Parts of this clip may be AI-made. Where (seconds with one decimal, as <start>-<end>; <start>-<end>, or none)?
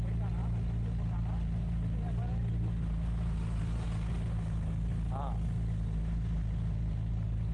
none